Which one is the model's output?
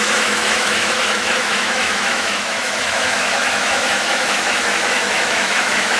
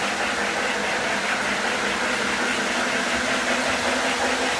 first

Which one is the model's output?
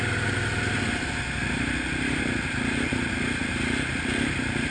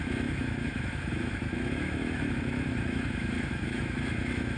second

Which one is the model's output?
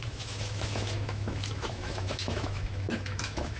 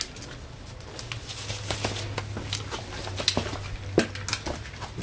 first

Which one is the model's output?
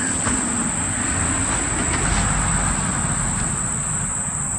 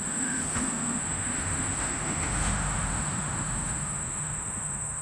second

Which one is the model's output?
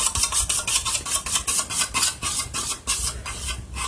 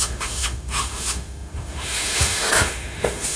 second